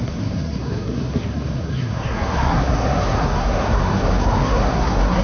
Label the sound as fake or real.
fake